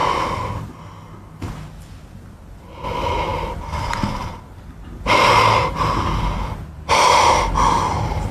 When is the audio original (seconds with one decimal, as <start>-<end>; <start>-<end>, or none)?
0.0-8.3